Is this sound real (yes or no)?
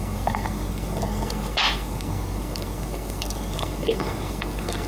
no